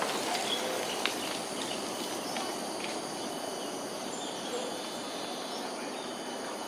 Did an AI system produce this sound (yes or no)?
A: no